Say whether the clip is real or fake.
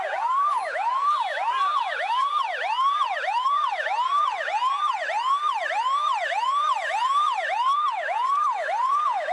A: fake